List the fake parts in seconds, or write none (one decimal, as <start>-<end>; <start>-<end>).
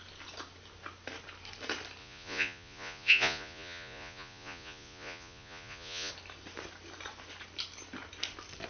2.0-6.1